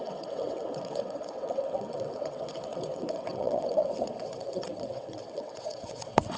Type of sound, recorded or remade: remade